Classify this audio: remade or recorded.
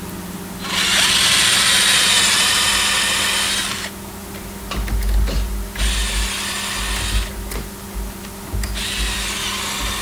recorded